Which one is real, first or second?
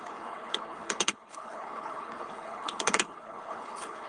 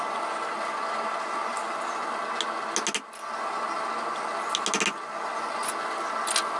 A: second